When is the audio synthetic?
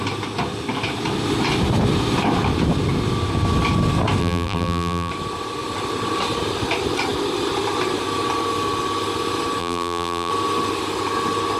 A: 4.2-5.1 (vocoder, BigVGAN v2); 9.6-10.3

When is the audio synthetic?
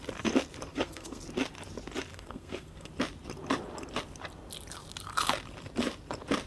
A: 0.7-1.2 (codec, SNAC); 2.1-2.9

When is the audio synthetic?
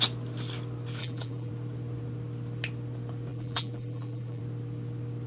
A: 1.0-1.5 (vocoder, BigVGAN v2); 3.3-4.4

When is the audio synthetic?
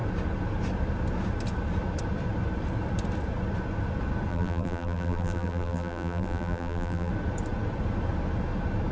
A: 4.3-7.1 (vocoder, BigVGAN v2)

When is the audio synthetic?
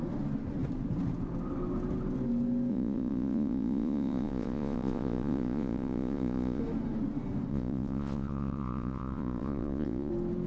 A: 2.7-6.6 (vocoder, Vocos); 7.5-10.1